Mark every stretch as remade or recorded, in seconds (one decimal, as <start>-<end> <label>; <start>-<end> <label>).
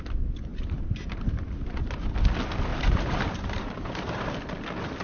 0.0-0.5 recorded; 0.5-2.1 remade; 2.1-2.7 recorded; 2.7-4.3 remade; 4.3-5.0 recorded